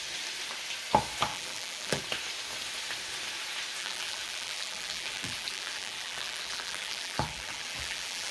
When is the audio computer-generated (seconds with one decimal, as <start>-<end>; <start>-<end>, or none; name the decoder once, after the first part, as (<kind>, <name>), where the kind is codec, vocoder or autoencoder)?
1.3-2.0 (vocoder, BigVGAN v2); 3.8-8.3